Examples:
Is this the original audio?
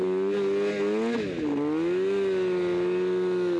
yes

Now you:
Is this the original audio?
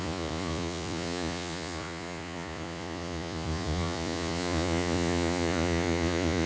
no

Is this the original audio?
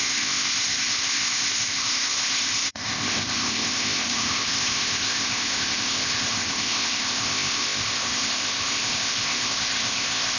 no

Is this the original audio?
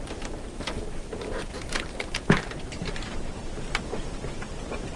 no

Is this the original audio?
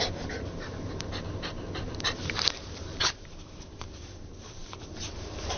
no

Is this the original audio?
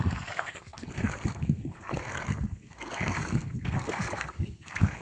no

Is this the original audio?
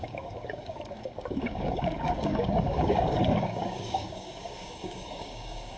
no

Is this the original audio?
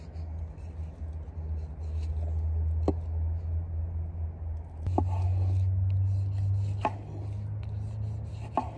yes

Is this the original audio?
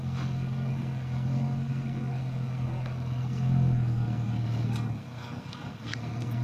no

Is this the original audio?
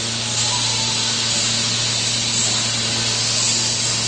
yes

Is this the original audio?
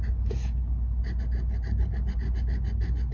yes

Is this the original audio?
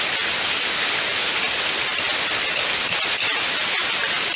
yes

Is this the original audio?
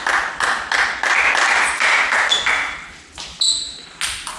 yes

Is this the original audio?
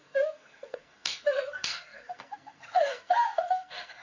no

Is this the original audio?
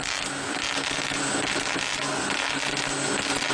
yes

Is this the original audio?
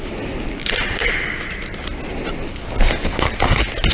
yes